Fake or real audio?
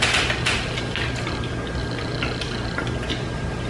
real